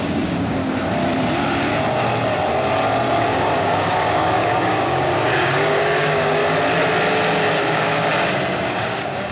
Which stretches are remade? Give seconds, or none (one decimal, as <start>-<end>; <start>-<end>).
0.0-0.6; 3.1-6.4; 7.6-8.1; 8.8-9.3